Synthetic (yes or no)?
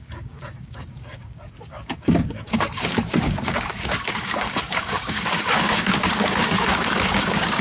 yes